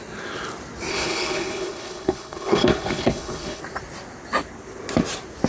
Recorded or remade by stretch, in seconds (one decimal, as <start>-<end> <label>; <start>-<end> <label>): 0.0-0.9 recorded; 0.9-3.6 remade; 3.6-5.5 recorded